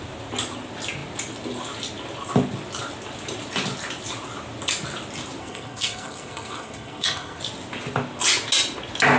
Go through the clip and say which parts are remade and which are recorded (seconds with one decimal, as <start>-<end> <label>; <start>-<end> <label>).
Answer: 0.0-5.4 recorded; 5.4-7.4 remade; 7.4-9.2 recorded